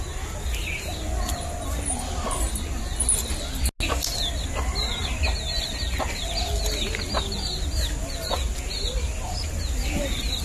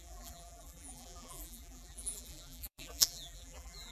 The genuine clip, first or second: first